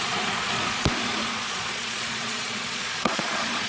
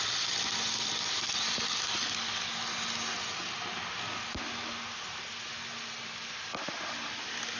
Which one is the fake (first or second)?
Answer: first